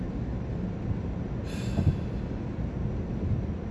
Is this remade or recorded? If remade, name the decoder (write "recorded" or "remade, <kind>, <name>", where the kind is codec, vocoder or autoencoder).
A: recorded